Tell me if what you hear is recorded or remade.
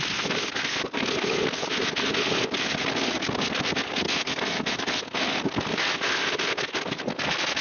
recorded